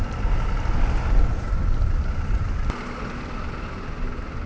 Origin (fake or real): real